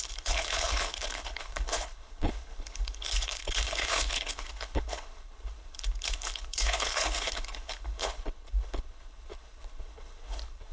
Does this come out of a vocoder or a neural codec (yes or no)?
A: yes